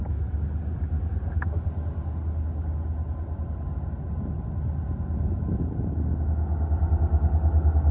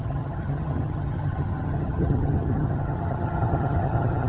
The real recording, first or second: first